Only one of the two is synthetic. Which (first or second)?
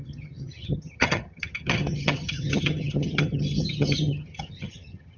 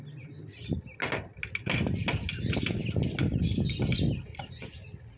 first